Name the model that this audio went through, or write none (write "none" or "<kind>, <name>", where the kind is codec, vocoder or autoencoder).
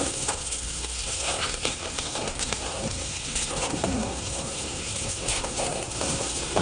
codec, SNAC